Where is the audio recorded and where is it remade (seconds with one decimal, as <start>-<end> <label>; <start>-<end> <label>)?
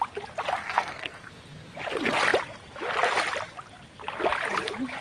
0.0-0.6 recorded; 0.6-1.3 remade; 1.3-5.0 recorded